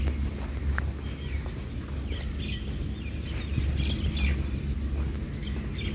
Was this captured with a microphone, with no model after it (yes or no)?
yes